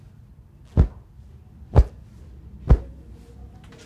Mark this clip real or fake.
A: real